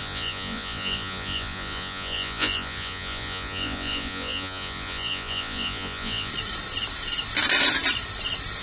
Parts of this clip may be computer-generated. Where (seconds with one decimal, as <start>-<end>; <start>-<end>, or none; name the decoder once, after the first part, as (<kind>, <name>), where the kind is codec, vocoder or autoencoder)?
0.0-6.3 (vocoder, Vocos)